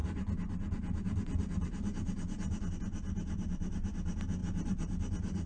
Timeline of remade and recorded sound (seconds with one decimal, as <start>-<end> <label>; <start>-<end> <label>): 0.0-4.4 recorded; 4.4-5.5 remade